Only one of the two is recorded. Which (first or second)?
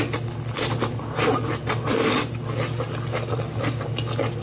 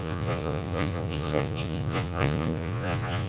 first